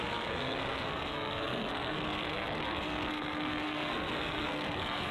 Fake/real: fake